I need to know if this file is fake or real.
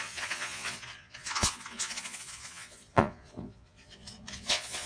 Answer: fake